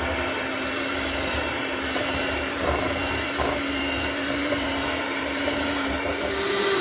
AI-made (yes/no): yes